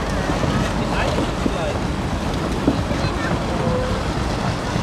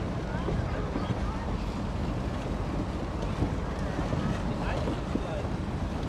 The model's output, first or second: second